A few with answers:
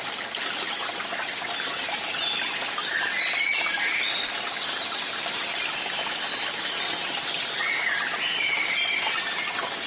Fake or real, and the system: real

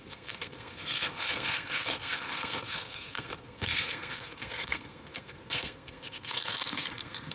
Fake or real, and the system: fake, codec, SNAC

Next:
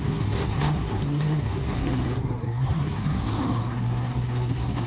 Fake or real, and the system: fake, codec, SNAC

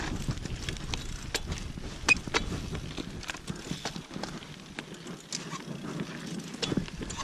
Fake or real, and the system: real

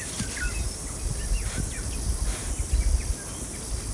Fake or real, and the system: real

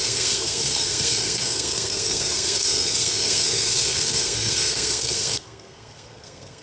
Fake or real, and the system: fake, codec, SNAC